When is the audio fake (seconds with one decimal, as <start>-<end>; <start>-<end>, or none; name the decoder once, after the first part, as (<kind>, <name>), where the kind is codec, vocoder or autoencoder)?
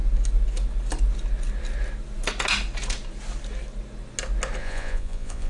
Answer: 4.6-5.5 (vocoder, Vocos)